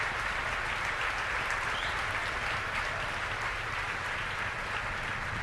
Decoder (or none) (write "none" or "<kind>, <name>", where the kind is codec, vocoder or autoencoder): none